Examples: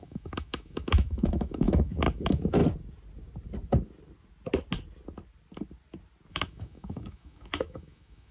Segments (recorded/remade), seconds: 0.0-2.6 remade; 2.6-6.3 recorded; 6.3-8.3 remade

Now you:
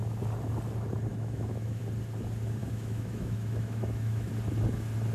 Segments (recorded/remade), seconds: 0.0-1.1 recorded; 1.1-1.8 remade; 1.8-2.6 recorded; 2.6-4.3 remade; 4.3-5.1 recorded

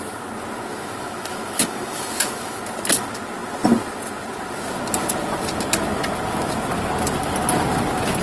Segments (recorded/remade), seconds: 0.0-0.7 recorded; 0.7-2.6 remade; 2.6-8.2 recorded

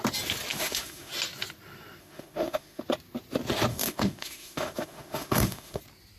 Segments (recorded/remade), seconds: 0.0-0.5 recorded; 0.5-1.1 remade; 1.1-2.0 recorded; 2.0-2.8 remade; 2.8-3.7 recorded; 3.7-5.8 remade; 5.8-6.2 recorded